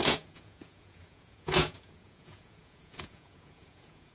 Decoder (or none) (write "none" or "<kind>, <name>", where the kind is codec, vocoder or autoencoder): vocoder, Vocos